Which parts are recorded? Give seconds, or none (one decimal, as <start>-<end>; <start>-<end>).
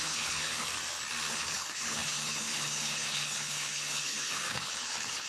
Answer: 0.7-1.3